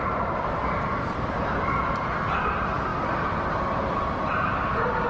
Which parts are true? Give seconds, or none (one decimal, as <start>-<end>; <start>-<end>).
1.2-5.1